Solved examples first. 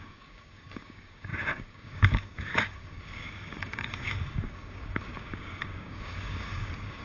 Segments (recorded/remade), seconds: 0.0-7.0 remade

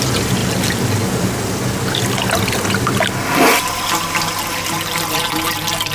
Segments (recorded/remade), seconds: 0.0-5.9 recorded

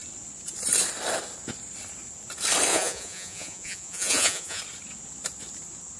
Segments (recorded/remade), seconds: 0.0-2.7 recorded; 2.7-4.6 remade; 4.6-6.0 recorded

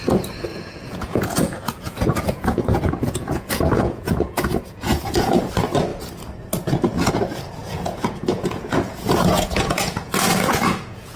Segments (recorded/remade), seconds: 0.0-0.5 recorded; 0.5-5.5 remade; 5.5-7.6 recorded; 7.6-11.2 remade

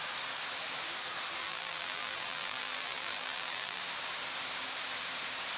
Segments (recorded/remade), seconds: 0.0-1.4 recorded; 1.4-3.8 remade; 3.8-5.6 recorded

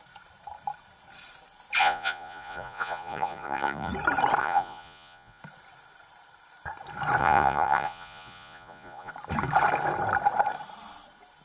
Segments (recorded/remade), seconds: 0.0-1.8 recorded; 1.8-3.9 remade; 3.9-4.4 recorded; 4.4-5.4 remade; 5.4-7.2 recorded; 7.2-9.1 remade; 9.1-11.4 recorded